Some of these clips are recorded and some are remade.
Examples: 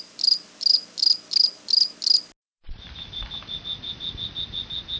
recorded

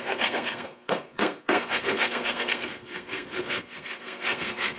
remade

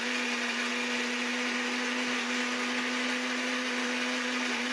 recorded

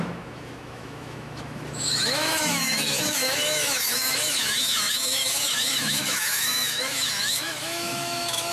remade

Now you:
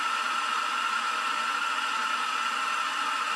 recorded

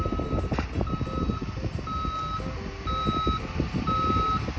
recorded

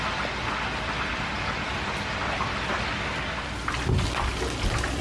recorded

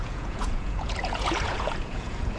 remade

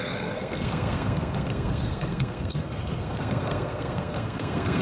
remade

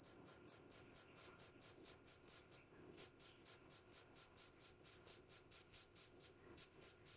remade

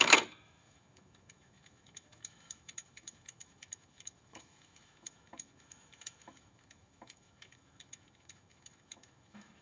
remade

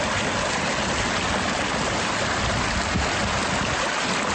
recorded